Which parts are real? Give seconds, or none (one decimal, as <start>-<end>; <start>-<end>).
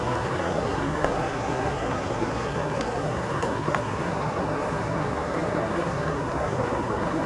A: none